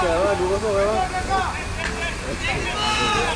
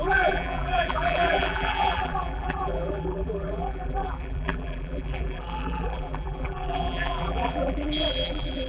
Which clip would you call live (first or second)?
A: first